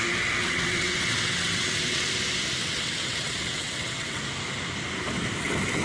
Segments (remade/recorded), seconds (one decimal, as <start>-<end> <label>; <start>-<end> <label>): 0.0-0.4 recorded; 0.4-2.1 remade; 2.1-2.6 recorded; 2.6-4.2 remade; 4.2-5.8 recorded